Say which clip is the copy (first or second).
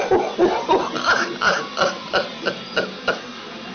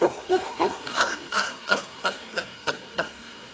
second